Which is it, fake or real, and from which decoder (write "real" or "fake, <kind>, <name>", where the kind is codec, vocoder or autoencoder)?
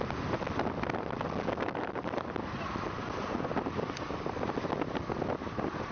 real